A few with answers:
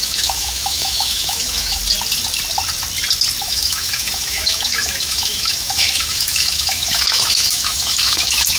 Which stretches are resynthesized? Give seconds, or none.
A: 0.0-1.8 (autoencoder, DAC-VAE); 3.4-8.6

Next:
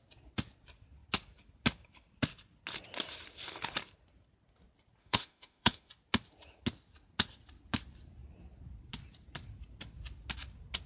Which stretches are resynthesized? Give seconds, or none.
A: 5.0-5.9 (autoencoder, DAC-VAE)

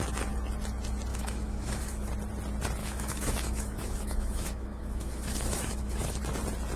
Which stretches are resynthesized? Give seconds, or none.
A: 1.1-2.1 (autoencoder, DAC-VAE); 2.8-6.2